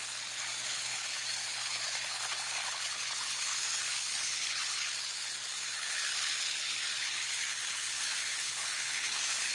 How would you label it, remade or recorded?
remade